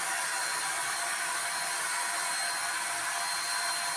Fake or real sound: real